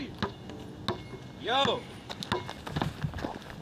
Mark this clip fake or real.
real